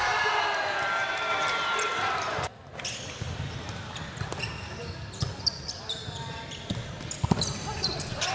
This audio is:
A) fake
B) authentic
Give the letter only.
B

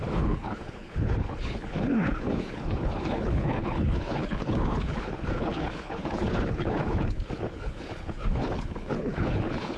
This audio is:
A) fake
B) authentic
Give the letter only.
A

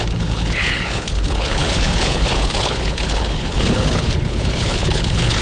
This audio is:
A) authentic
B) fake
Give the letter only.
B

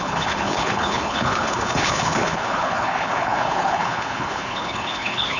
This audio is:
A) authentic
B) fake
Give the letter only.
B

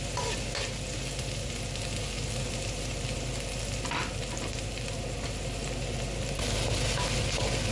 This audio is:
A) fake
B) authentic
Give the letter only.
B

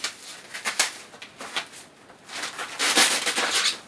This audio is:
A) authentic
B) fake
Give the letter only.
A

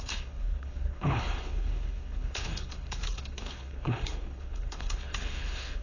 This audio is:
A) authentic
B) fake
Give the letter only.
B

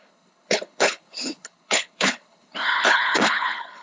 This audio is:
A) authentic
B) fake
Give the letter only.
B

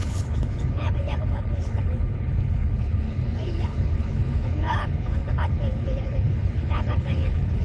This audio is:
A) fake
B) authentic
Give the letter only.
A